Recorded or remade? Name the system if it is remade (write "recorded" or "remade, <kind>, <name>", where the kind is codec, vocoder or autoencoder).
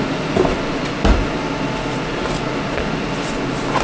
recorded